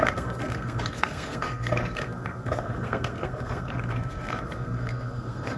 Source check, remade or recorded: remade